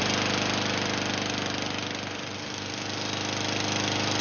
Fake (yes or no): no